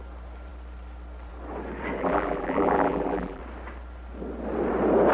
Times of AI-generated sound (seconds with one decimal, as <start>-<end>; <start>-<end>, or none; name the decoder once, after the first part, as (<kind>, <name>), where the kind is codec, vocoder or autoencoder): 2.0-3.4 (vocoder, BigVGAN v2)